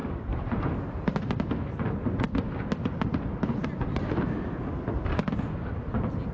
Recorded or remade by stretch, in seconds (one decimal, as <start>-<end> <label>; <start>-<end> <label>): 0.0-1.3 remade; 1.3-3.6 recorded; 3.6-4.4 remade; 4.4-6.3 recorded